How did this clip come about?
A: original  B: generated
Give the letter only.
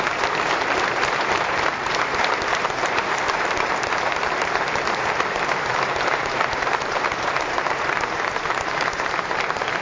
B